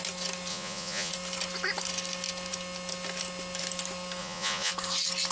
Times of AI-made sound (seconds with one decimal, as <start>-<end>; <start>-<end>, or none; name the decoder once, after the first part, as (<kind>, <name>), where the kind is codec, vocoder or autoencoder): 0.5-1.1 (vocoder, Vocos); 4.2-4.7